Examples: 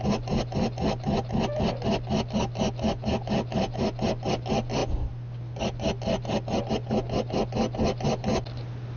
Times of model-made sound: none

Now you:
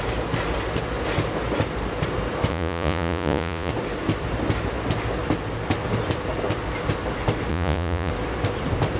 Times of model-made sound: 2.5-3.7 (vocoder, Vocos); 7.5-8.1